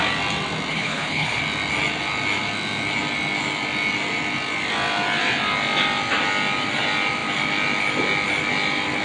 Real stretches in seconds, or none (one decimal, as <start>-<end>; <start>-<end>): 0.0-0.7; 1.4-9.0